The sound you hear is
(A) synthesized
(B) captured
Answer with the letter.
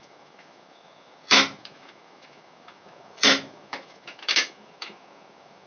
A